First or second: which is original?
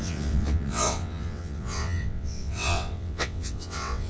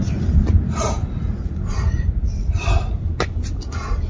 second